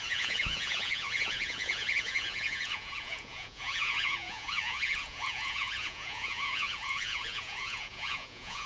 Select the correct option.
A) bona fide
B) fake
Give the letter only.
B